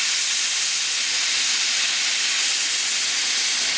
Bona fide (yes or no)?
yes